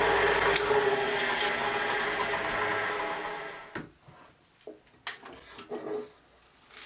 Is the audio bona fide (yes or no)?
yes